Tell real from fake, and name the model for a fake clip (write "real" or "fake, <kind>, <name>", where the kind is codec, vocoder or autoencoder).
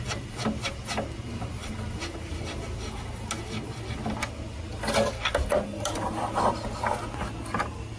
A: real